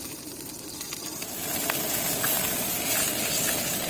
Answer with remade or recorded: remade